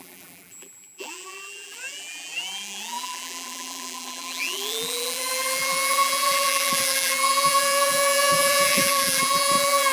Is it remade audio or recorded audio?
remade